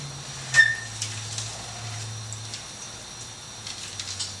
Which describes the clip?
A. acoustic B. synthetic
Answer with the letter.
A